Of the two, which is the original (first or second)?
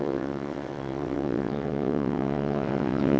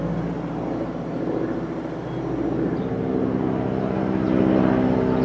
second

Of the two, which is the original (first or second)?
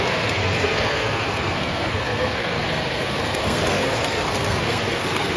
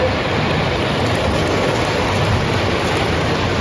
second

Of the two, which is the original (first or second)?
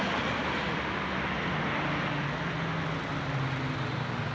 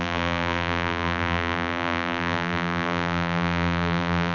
first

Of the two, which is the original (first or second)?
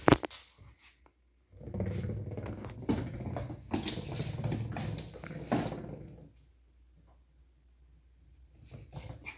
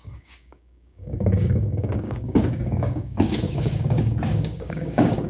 first